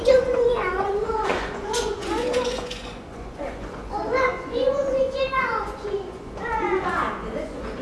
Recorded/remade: remade